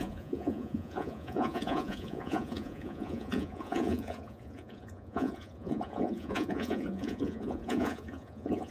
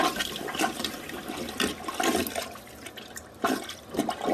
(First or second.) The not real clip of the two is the first